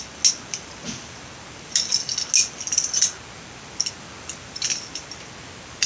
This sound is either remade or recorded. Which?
recorded